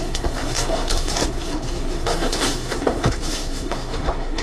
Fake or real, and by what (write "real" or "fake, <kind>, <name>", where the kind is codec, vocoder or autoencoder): fake, codec, SNAC